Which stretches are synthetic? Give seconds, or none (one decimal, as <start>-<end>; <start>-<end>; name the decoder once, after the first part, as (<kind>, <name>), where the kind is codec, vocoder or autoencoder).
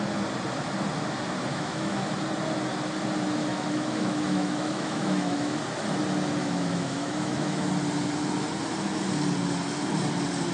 1.5-2.1 (autoencoder, DAC-VAE); 3.5-5.6; 6.4-7.7